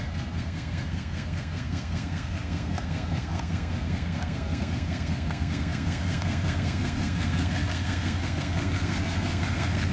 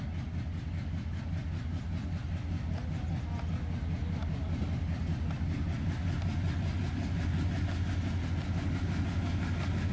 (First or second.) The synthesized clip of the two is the first